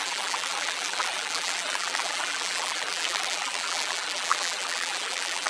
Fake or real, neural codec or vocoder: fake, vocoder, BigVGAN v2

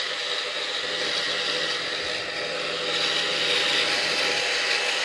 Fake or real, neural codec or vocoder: real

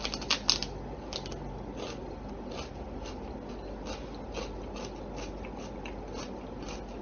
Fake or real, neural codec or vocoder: real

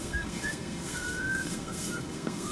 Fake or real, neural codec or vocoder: fake, codec, SNAC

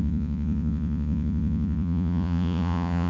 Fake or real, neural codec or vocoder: fake, vocoder, Vocos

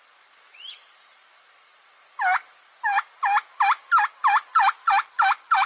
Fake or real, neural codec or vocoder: real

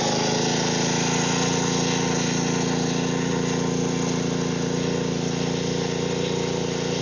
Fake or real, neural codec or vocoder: real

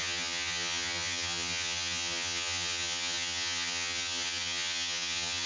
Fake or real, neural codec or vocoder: fake, vocoder, HiFi-GAN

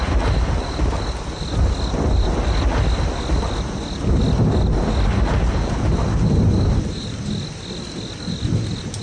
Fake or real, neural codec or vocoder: real